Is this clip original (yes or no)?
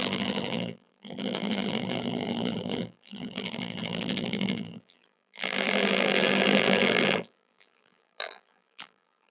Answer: no